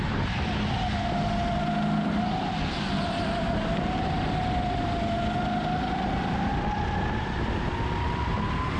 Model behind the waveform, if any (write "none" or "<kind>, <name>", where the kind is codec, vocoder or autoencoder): none